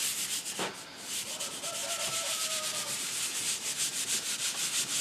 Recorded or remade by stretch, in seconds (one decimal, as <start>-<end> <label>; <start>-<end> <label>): 0.0-1.8 recorded; 1.8-3.2 remade; 3.2-5.0 recorded

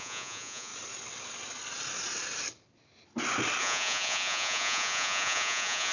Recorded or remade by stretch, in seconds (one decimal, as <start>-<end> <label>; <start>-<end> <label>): 0.0-0.7 remade; 0.7-3.6 recorded; 3.6-5.9 remade

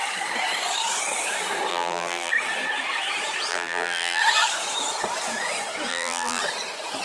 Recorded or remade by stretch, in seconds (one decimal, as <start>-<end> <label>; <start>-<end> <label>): 0.0-1.7 recorded; 1.7-2.3 remade; 2.3-3.5 recorded; 3.5-4.2 remade; 4.2-5.9 recorded; 5.9-6.4 remade; 6.4-7.0 recorded